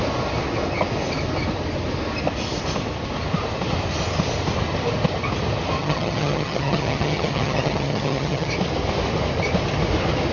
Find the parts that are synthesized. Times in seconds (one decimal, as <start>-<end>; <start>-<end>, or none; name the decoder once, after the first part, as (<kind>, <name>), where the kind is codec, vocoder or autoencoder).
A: 5.8-8.5 (vocoder, HiFi-GAN)